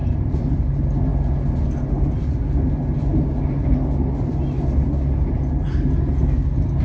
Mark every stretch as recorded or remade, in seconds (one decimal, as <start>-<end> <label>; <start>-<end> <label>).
0.0-6.8 recorded